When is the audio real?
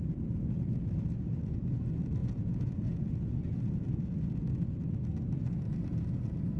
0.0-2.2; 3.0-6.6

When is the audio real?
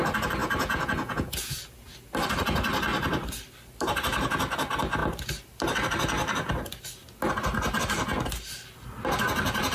0.0-0.4; 1.6-9.7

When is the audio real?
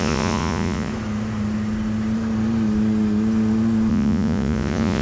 0.9-3.9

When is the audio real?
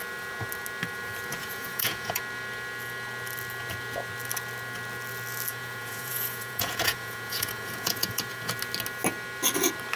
0.0-1.4; 2.2-5.5; 8.5-10.0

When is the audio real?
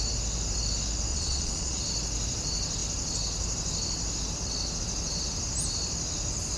0.0-1.1; 1.8-6.6